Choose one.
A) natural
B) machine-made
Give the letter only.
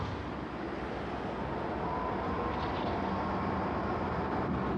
A